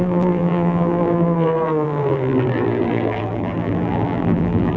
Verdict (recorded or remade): remade